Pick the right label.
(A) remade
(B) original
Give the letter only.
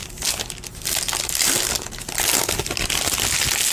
B